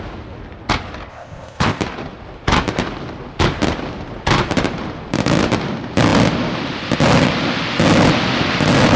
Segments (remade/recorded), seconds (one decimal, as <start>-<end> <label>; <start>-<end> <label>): 0.0-1.1 recorded; 1.1-1.8 remade; 1.8-9.0 recorded